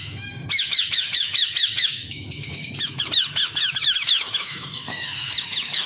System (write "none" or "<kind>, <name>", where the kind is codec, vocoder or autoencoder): autoencoder, DAC-VAE